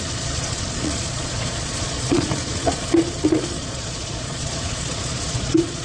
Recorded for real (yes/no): no